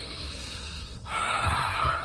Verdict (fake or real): fake